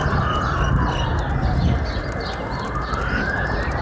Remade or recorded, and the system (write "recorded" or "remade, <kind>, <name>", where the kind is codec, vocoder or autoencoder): recorded